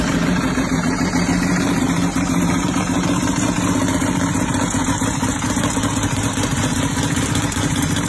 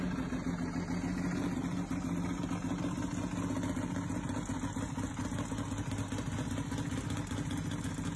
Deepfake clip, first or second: first